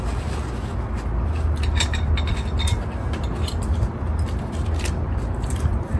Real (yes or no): yes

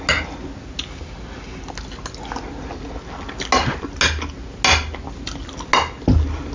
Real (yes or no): yes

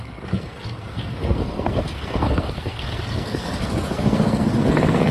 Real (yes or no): no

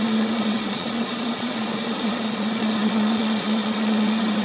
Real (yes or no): no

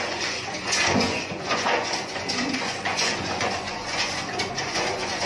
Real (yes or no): no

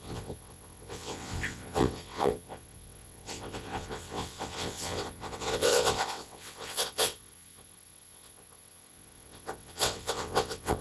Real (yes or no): no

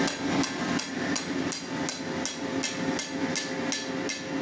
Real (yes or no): yes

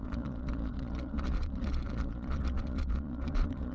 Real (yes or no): no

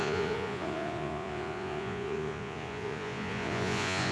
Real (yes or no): no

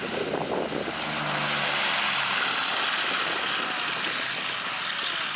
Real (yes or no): yes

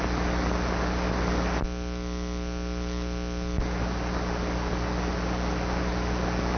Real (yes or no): yes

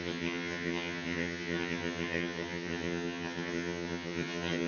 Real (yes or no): no